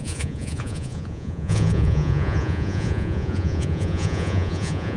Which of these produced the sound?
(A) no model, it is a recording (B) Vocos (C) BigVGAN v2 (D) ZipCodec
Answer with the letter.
B